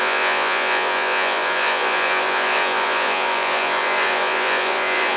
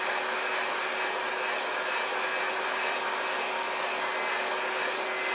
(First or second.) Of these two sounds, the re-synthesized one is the first